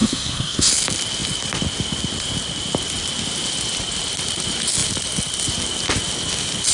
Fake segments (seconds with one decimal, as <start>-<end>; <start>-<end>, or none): 0.0-0.7